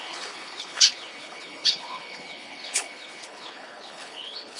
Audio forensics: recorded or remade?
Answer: remade